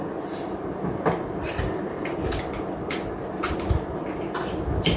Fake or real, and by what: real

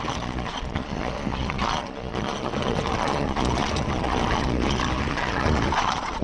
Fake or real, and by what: fake, vocoder, Vocos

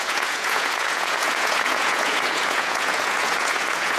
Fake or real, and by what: fake, vocoder, Vocos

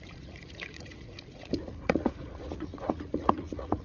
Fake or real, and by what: fake, vocoder, Vocos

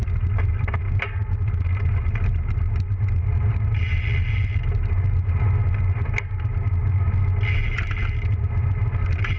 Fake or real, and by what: real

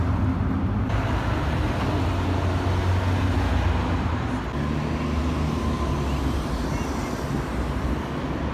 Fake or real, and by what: real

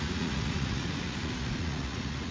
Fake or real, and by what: fake, vocoder, Vocos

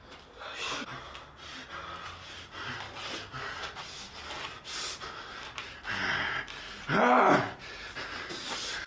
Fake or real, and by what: real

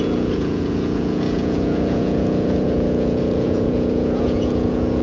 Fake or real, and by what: fake, vocoder, Vocos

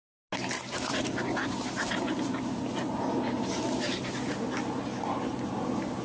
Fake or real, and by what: real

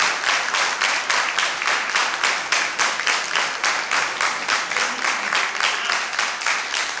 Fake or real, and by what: real